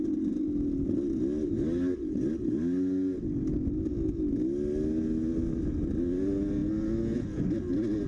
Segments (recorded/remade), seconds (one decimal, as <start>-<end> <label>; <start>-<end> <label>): 0.0-8.1 recorded